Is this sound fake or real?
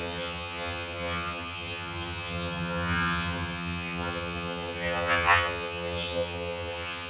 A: fake